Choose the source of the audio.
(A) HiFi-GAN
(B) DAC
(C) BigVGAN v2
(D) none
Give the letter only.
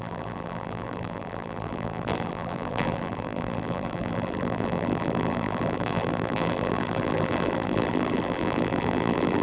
C